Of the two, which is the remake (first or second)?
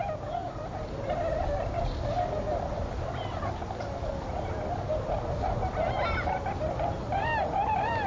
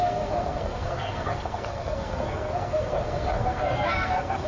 second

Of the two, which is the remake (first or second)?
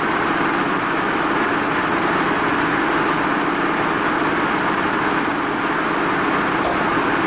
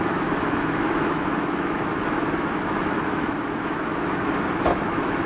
second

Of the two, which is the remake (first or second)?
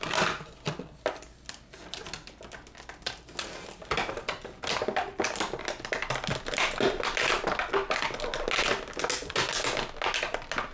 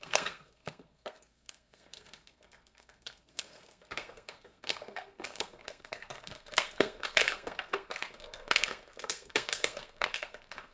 second